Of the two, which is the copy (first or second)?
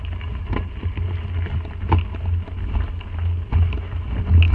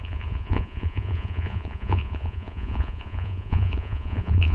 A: second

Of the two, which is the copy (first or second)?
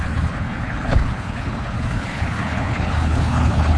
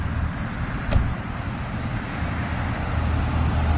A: first